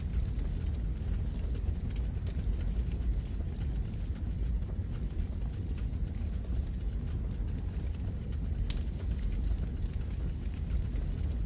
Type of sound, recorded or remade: recorded